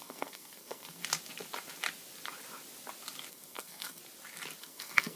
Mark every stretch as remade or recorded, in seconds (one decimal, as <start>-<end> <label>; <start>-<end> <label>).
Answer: 0.0-1.0 remade; 1.0-3.3 recorded; 3.3-4.0 remade; 4.0-4.6 recorded; 4.6-5.2 remade